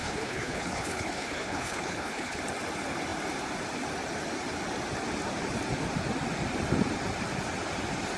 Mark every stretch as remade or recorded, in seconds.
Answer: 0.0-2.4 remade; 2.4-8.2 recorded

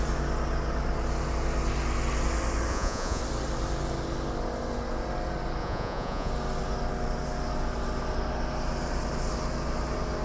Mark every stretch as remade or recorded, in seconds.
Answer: 0.0-2.7 recorded; 2.7-3.2 remade; 3.2-5.6 recorded; 5.6-6.3 remade; 6.3-10.2 recorded

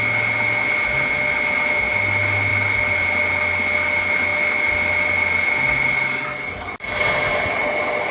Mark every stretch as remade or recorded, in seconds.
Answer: 0.0-8.1 recorded

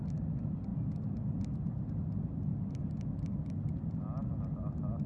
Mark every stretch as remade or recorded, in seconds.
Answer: 0.0-5.1 recorded

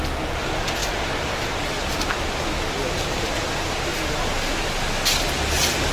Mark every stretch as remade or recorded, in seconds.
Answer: 0.0-0.8 recorded; 0.8-1.9 remade; 1.9-5.9 recorded

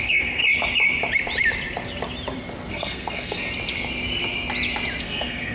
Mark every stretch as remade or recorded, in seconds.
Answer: 0.0-0.4 remade; 0.4-2.7 recorded; 2.7-3.4 remade; 3.4-5.0 recorded; 5.0-5.5 remade

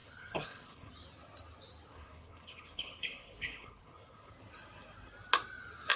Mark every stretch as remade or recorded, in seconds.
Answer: 0.0-0.9 remade; 0.9-1.9 recorded; 1.9-4.3 remade; 4.3-6.0 recorded